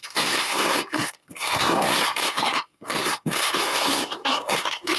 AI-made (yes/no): yes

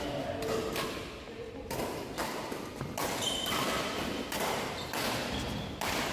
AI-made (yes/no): no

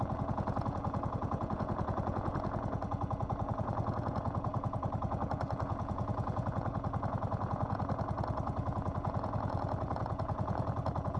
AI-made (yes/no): yes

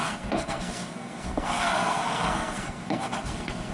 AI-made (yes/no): yes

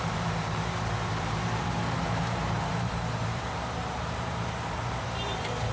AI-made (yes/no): yes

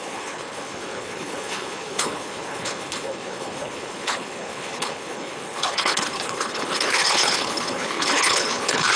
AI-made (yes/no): yes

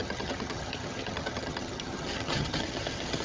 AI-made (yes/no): yes